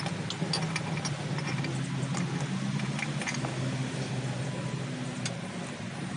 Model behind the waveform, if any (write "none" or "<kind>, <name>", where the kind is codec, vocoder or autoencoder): none